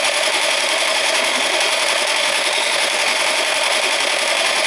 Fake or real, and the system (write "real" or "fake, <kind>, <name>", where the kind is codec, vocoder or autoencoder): fake, autoencoder, DAC-VAE